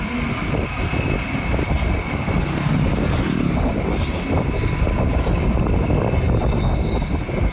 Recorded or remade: recorded